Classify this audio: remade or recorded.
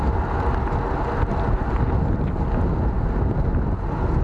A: recorded